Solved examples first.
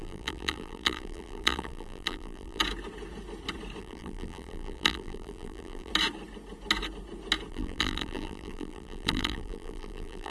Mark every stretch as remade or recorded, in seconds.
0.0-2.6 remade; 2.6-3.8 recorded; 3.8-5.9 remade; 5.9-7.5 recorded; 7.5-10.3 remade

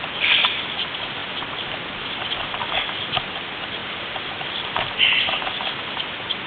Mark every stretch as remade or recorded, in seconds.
0.0-6.5 recorded

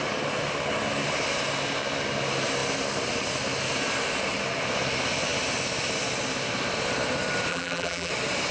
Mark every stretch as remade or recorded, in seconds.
0.0-7.5 recorded; 7.5-8.1 remade; 8.1-8.5 recorded

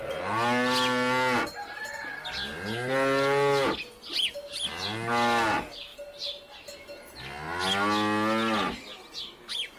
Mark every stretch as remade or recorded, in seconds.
0.0-9.8 recorded